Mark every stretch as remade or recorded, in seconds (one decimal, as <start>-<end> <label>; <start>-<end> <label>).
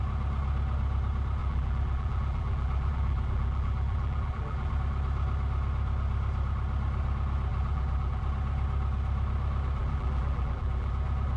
0.0-1.4 recorded; 1.4-4.7 remade; 4.7-7.5 recorded; 7.5-8.2 remade; 8.2-9.8 recorded; 9.8-10.9 remade; 10.9-11.4 recorded